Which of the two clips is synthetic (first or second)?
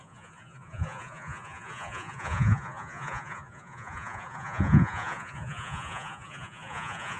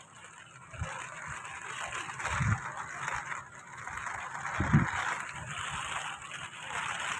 first